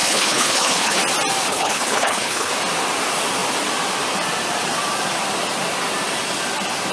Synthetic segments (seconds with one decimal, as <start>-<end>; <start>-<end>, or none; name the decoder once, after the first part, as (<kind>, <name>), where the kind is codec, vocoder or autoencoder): 0.0-1.0 (codec, HILCodec); 1.5-2.5

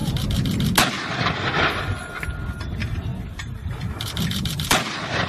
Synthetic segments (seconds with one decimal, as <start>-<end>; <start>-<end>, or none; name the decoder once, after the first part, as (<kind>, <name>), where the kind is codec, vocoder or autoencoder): 2.6-3.1 (vocoder, BigVGAN v2); 3.7-5.3